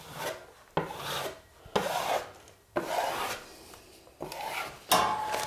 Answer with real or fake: real